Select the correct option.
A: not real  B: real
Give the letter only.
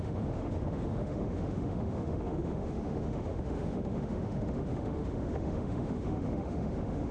A